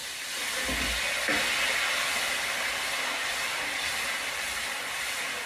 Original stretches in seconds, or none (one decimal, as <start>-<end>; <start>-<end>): 0.0-5.5